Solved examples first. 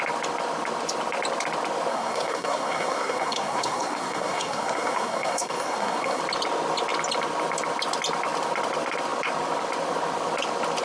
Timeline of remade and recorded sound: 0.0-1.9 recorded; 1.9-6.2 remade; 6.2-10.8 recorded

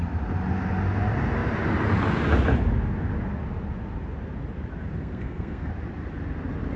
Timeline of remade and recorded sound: 0.0-5.0 recorded; 5.0-5.7 remade; 5.7-6.8 recorded

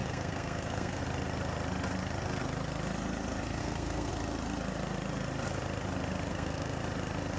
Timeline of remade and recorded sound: 0.0-1.0 remade; 1.0-3.6 recorded; 3.6-4.1 remade; 4.1-6.3 recorded; 6.3-6.8 remade; 6.8-7.4 recorded

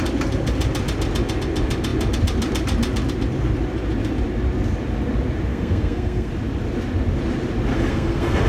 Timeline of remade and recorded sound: 0.0-5.5 recorded; 5.5-6.3 remade; 6.3-7.7 recorded; 7.7-8.5 remade

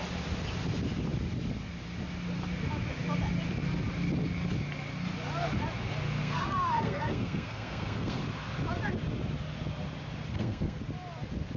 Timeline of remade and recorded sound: 0.0-6.2 recorded; 6.2-8.2 remade; 8.2-10.3 recorded; 10.3-10.8 remade; 10.8-11.6 recorded

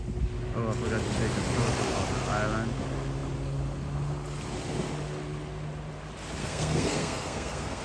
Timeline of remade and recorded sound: 0.0-6.4 recorded; 6.4-7.8 remade